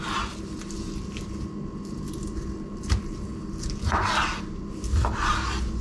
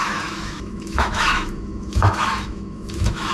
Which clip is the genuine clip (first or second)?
first